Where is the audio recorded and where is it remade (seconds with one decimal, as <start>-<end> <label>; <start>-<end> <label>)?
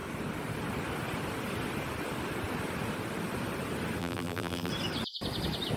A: 0.0-4.0 recorded; 4.0-4.7 remade; 4.7-5.8 recorded